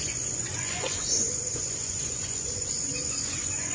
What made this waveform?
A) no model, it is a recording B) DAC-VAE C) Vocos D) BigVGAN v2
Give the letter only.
C